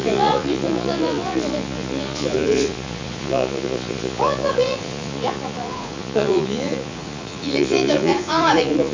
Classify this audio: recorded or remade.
remade